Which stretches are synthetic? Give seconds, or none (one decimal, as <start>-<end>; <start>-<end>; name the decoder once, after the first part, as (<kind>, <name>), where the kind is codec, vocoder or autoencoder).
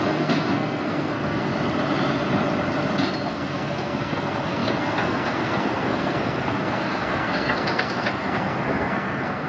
0.0-1.5 (codec, SNAC); 3.3-9.5